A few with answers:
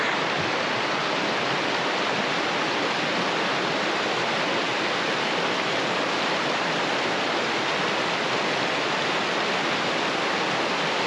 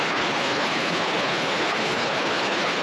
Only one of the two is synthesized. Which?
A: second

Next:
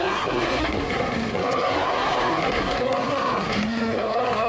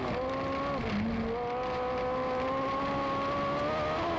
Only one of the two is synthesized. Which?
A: first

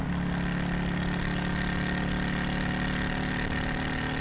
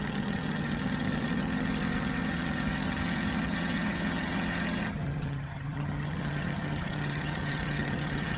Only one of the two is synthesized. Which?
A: second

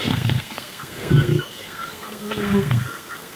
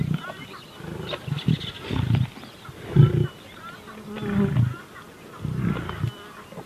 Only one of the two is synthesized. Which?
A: first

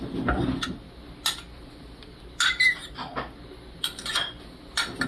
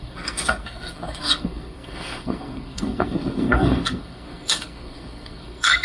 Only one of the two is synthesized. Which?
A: second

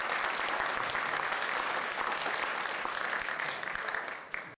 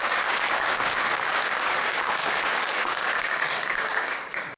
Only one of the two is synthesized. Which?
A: second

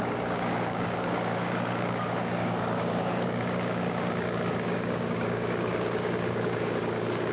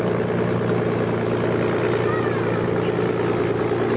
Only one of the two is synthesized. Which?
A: first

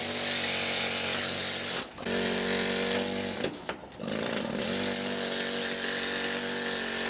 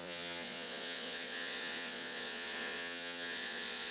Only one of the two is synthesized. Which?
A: second